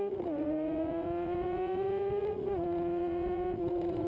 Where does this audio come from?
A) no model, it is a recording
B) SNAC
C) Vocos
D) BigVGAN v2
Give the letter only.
C